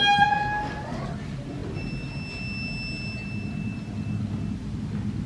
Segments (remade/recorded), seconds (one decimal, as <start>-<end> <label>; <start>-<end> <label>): 0.0-5.3 recorded